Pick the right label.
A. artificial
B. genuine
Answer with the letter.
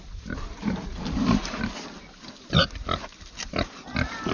B